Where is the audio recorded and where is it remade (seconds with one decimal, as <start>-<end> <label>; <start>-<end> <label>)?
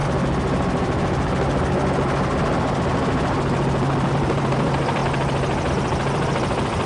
0.0-4.1 recorded; 4.1-5.0 remade; 5.0-5.7 recorded; 5.7-6.9 remade